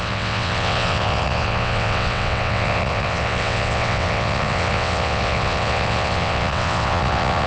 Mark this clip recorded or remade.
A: remade